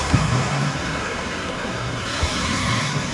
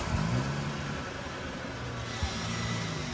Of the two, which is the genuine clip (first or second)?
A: second